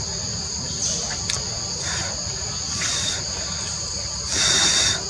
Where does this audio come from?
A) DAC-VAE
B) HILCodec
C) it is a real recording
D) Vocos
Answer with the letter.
C